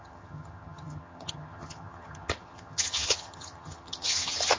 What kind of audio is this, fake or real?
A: fake